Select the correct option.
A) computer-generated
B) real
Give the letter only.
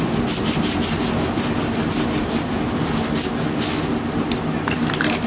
B